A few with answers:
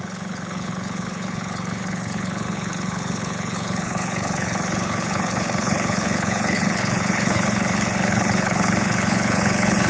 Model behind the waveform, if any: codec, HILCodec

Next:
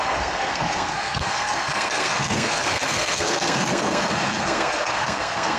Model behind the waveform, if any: codec, SNAC